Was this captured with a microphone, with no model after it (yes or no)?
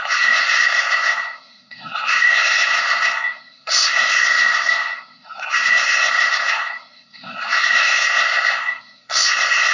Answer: no